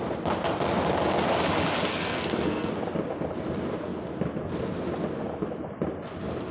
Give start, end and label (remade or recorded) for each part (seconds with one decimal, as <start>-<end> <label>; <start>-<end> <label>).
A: 0.0-1.9 recorded; 1.9-2.7 remade; 2.7-6.5 recorded